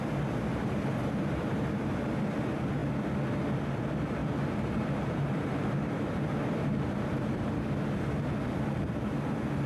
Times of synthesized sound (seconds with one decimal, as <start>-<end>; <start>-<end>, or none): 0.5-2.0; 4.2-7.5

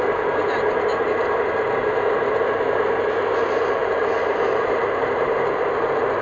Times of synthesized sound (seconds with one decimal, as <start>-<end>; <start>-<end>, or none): 3.8-5.7

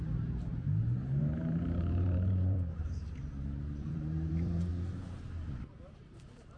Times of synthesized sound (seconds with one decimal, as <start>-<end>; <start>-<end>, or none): 0.0-0.5; 1.2-4.7; 5.9-6.6